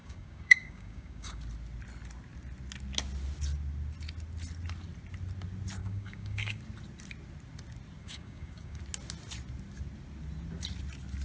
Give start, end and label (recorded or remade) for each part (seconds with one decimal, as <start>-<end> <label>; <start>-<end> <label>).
0.0-1.4 remade; 1.4-5.8 recorded; 5.8-6.6 remade; 6.6-8.0 recorded; 8.0-8.8 remade; 8.8-11.2 recorded